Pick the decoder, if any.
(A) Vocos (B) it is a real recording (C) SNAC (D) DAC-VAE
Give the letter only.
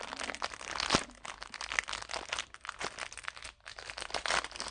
B